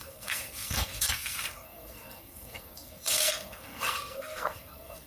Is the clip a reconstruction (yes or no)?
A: yes